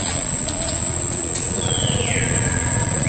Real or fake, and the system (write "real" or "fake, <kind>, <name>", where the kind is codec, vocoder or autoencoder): fake, vocoder, Vocos